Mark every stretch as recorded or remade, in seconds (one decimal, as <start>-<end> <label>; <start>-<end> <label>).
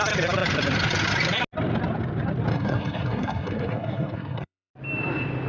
0.0-2.5 recorded; 2.5-4.7 remade; 4.7-5.5 recorded